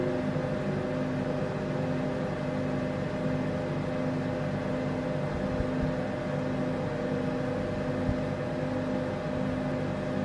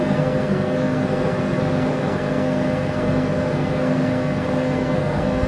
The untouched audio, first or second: first